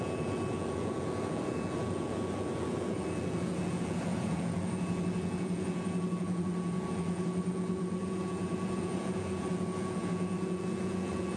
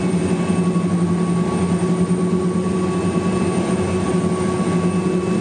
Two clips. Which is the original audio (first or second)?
second